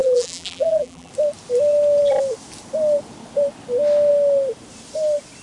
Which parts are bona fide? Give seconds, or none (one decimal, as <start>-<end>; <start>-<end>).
1.1-5.4